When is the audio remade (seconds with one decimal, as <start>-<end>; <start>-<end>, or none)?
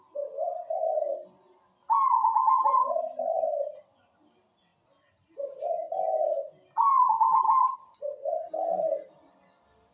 3.1-3.8